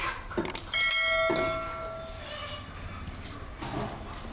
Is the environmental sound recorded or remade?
recorded